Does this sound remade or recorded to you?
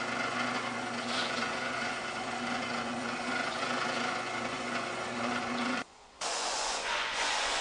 remade